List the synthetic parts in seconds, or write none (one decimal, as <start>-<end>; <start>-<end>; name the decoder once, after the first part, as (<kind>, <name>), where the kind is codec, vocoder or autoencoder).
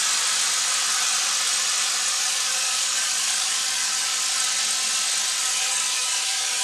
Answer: 2.1-4.1 (codec, DAC); 5.4-6.6